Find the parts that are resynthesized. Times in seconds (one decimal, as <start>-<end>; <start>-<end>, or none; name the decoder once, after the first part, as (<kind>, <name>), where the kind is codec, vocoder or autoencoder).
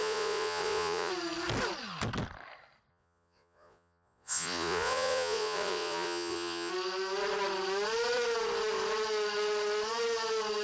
0.0-1.1 (vocoder, Vocos); 2.9-6.7